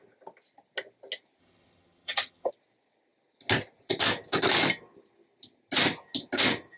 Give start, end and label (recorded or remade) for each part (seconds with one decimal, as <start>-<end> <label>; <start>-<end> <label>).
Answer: 0.0-1.4 recorded; 1.4-2.5 remade; 2.5-6.8 recorded